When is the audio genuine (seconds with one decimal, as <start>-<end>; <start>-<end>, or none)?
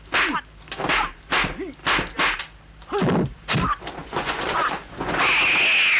0.0-4.0; 5.2-6.0